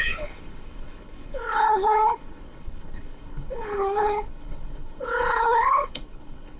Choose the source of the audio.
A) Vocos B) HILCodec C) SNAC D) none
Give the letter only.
B